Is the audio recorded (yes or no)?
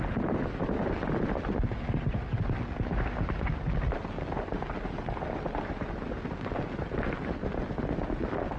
yes